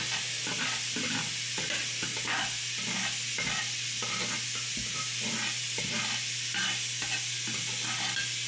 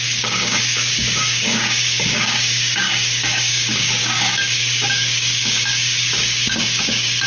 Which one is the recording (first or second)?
first